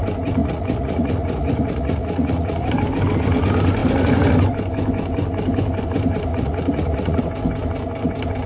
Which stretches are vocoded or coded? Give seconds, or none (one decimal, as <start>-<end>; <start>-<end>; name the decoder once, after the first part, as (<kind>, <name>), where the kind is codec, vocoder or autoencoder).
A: 0.4-2.7 (vocoder, Vocos); 6.3-7.2

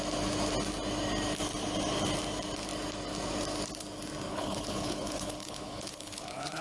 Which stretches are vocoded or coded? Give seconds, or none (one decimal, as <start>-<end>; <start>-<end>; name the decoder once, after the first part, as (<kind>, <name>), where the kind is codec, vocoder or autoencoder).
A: 4.3-6.6 (codec, HILCodec)

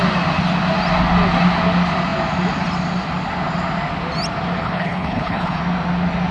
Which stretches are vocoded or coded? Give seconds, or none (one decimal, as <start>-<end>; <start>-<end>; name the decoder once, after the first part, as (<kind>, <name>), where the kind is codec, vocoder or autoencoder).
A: 4.6-5.6 (codec, HILCodec)

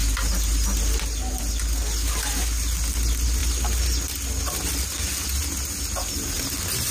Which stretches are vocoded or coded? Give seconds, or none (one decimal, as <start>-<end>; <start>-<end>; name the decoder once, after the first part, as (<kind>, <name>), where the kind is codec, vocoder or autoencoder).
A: none

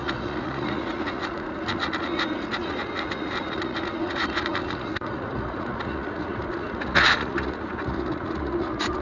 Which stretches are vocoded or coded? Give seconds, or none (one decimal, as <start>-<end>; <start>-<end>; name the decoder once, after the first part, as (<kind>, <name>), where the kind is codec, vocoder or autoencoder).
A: 0.0-9.0 (vocoder, Vocos)